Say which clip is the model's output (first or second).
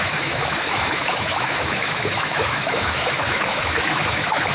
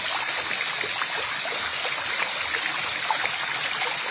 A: first